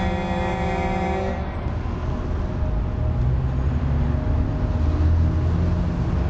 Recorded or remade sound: recorded